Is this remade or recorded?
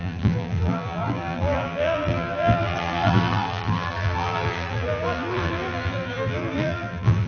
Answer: remade